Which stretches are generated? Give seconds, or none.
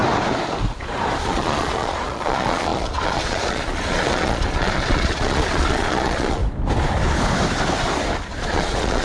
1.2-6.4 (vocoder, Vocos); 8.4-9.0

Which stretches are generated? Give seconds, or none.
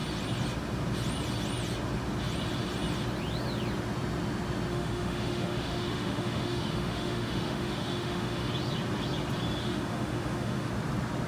4.7-8.5 (autoencoder, DAC-VAE); 9.6-10.7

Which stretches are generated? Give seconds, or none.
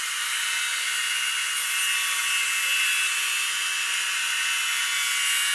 none